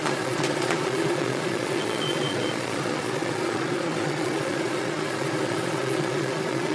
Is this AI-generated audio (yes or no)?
yes